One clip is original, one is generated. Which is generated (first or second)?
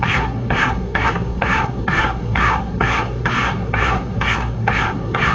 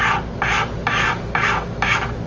first